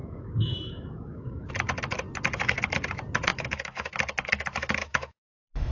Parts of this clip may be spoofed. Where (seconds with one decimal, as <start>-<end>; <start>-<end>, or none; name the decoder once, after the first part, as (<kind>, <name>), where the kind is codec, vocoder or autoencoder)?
0.0-1.5 (autoencoder, DAC-VAE); 3.3-3.9; 4.8-5.7